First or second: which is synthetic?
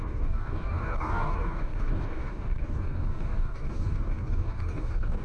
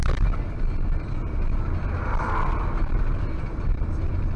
first